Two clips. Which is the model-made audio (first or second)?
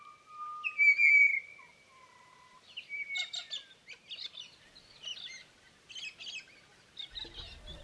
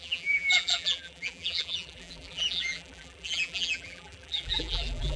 second